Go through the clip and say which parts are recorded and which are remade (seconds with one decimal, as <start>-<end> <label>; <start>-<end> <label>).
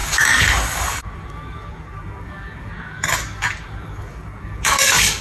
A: 0.0-5.2 remade